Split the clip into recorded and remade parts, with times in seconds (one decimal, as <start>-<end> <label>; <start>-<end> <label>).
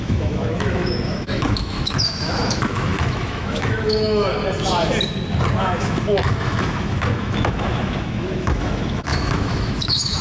0.0-4.3 remade; 4.3-5.6 recorded; 5.6-10.2 remade